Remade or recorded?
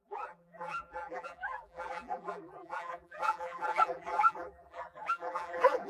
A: remade